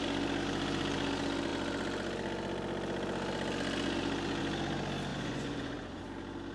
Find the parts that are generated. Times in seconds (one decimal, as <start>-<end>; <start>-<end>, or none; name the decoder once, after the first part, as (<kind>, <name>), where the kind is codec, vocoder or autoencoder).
5.1-6.0 (vocoder, Vocos)